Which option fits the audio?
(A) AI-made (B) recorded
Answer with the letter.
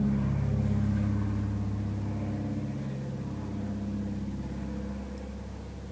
B